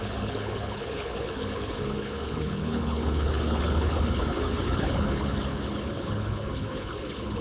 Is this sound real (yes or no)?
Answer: no